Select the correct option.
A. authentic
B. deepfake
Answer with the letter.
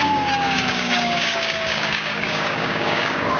B